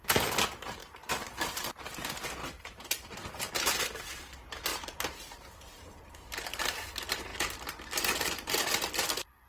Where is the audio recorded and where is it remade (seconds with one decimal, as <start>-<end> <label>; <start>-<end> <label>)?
0.0-0.8 recorded; 0.8-1.7 remade; 1.7-2.4 recorded; 2.4-3.5 remade; 3.5-4.7 recorded; 4.7-6.5 remade; 6.5-9.5 recorded